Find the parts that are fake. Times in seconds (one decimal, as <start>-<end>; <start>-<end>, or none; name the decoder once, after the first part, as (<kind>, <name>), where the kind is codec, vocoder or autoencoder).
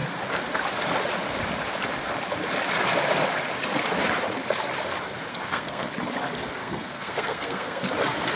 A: 5.3-5.9 (codec, SNAC); 6.6-7.9